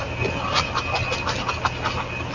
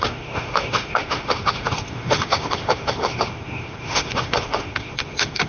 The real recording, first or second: first